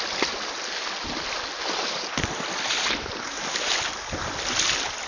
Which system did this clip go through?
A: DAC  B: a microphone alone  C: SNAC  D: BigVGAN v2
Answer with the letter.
B